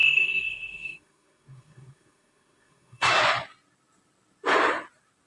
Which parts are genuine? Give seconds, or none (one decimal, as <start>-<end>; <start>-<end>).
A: 3.2-5.3